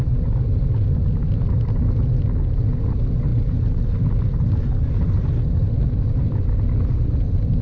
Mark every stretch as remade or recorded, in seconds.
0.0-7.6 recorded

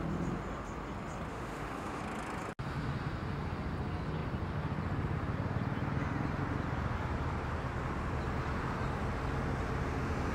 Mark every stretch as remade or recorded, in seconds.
0.0-1.3 recorded; 1.3-2.0 remade; 2.0-10.3 recorded